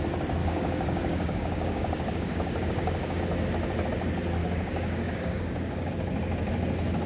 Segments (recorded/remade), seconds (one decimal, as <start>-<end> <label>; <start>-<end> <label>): 0.0-0.4 recorded; 0.4-3.2 remade; 3.2-4.4 recorded; 4.4-5.9 remade; 5.9-7.1 recorded